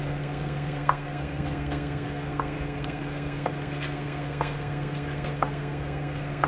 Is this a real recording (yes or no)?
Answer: no